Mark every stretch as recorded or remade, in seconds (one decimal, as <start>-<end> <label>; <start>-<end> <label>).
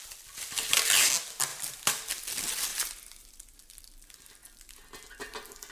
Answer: 0.0-2.7 recorded; 2.7-3.8 remade; 3.8-5.7 recorded